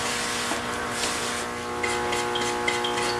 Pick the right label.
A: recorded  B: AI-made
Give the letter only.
A